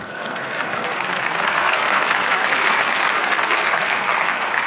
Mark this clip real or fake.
fake